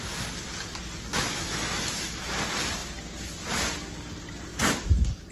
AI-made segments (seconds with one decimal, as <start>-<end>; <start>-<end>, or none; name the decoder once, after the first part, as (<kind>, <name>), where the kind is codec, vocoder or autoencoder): 1.1-2.2 (autoencoder, DAC-VAE)

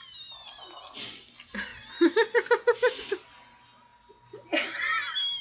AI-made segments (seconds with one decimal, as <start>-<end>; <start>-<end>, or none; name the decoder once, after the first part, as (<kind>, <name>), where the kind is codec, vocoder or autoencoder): none

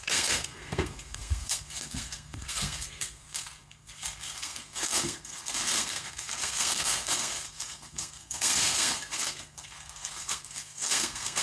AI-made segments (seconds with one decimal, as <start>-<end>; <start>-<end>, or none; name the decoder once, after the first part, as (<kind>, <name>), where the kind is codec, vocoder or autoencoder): 0.0-11.4 (codec, SNAC)

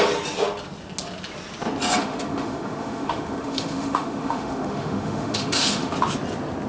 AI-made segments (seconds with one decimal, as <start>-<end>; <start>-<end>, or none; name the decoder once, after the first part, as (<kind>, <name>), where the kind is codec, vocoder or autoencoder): 2.0-5.9 (autoencoder, DAC-VAE)

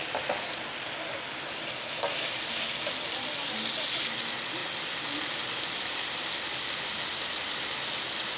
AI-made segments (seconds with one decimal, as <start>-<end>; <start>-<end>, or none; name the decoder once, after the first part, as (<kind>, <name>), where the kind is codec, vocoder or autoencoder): 4.6-7.3 (vocoder, BigVGAN v2)

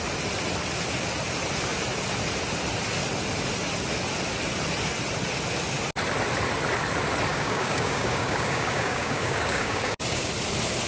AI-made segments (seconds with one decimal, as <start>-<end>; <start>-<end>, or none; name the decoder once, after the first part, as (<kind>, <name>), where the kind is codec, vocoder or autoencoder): 7.3-10.3 (codec, DAC)

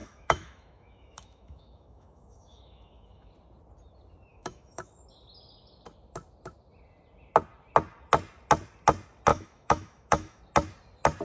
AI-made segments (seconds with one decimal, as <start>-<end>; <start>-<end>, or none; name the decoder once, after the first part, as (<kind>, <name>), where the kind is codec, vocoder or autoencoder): 0.0-3.3 (autoencoder, DAC-VAE); 4.3-4.9; 9.3-10.4

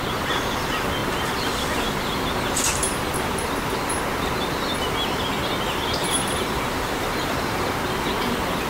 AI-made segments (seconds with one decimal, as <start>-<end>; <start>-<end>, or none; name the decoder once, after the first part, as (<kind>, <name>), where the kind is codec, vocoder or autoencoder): 6.0-7.1 (vocoder, BigVGAN v2)